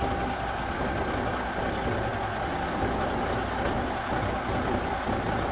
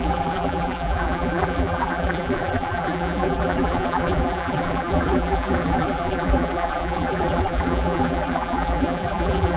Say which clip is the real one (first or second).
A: first